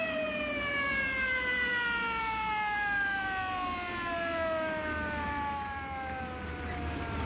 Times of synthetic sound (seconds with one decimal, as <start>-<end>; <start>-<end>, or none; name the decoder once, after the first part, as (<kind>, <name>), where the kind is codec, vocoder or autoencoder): none